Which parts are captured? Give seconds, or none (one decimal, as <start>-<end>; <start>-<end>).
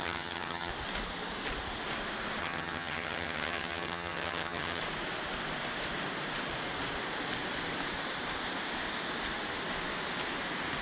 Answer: 0.7-2.4; 4.8-10.8